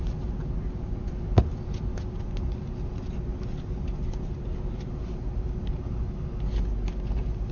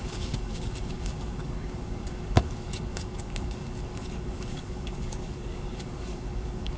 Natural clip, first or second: first